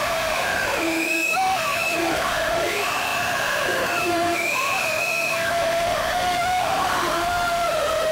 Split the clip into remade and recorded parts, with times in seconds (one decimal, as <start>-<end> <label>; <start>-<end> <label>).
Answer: 0.0-8.1 remade